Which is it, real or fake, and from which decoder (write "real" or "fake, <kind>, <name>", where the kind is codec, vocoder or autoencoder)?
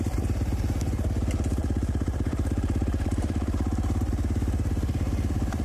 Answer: fake, vocoder, BigVGAN v2